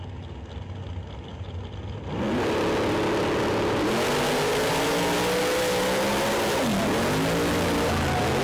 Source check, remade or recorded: recorded